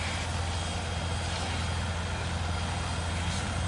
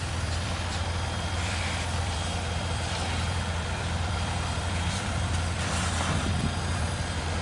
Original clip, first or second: first